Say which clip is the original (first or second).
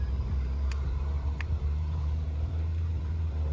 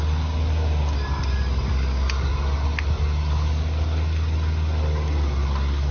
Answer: second